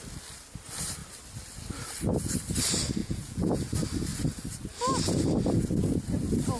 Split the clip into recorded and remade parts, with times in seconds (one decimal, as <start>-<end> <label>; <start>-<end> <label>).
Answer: 0.0-3.0 recorded; 3.0-3.6 remade; 3.6-6.6 recorded